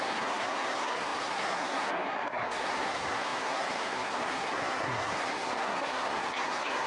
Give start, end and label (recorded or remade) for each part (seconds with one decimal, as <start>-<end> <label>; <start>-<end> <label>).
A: 0.0-6.9 remade